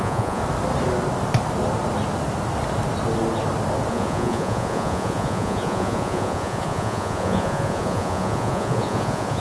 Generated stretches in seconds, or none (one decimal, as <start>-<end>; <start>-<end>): 0.0-0.4; 3.9-9.4